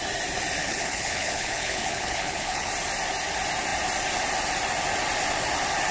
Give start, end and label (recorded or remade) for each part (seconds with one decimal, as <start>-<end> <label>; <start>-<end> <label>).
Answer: 0.0-0.6 recorded; 0.6-2.7 remade; 2.7-5.9 recorded